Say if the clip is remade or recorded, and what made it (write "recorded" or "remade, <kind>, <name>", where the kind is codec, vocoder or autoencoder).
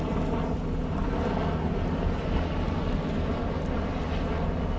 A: recorded